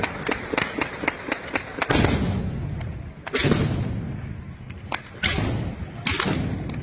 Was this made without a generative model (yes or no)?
yes